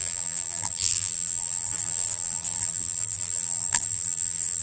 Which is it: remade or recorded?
remade